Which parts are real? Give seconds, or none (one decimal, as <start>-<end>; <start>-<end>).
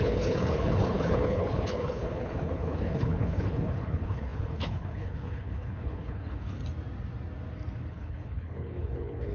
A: 6.6-7.9